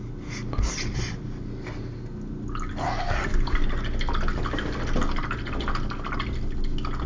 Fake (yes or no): no